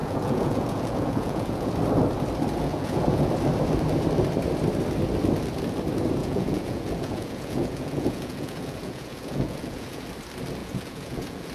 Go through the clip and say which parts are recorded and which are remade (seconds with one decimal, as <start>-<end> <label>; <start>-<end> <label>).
0.0-1.7 remade; 1.7-2.7 recorded; 2.7-3.3 remade; 3.3-6.2 recorded; 6.2-10.0 remade; 10.0-10.6 recorded; 10.6-11.5 remade